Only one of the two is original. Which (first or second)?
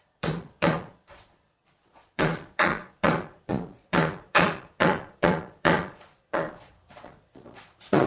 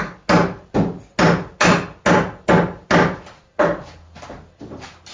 second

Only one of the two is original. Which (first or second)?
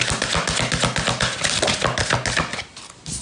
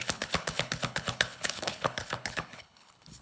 first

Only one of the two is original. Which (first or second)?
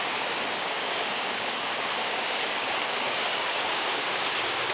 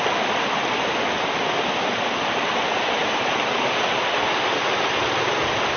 second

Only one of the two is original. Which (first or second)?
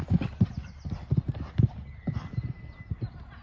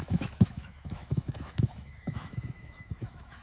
first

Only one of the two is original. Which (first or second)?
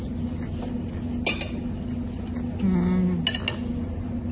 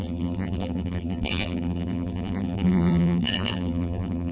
first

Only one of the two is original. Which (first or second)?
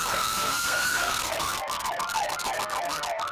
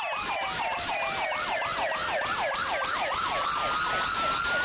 second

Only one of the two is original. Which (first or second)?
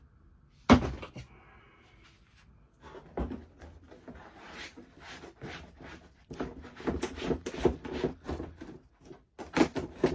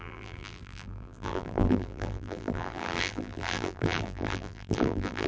first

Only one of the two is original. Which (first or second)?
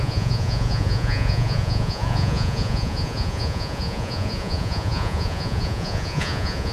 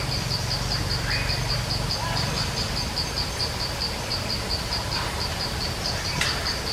second